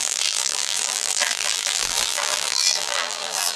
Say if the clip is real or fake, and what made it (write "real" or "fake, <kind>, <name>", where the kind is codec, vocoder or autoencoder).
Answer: fake, vocoder, BigVGAN v2